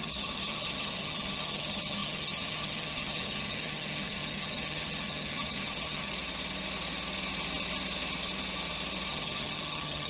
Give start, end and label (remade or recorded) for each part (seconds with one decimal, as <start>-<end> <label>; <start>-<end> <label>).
0.0-6.1 remade; 6.1-9.1 recorded; 9.1-10.1 remade